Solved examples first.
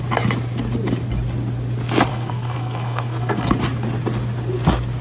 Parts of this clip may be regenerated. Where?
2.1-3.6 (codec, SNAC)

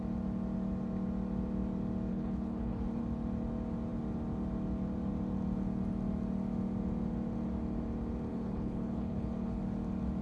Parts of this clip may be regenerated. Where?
2.1-3.0 (codec, HILCodec); 8.3-9.6